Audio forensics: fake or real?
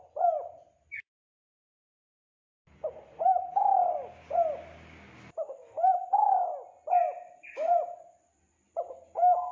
real